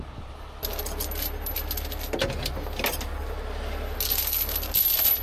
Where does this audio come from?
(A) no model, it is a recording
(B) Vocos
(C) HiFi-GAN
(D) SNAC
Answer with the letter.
A